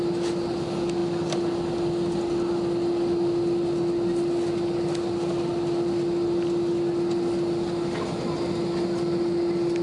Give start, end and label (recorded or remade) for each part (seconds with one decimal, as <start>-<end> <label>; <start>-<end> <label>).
0.0-9.8 recorded